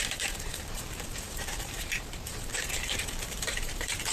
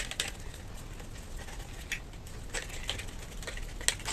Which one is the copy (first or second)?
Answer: first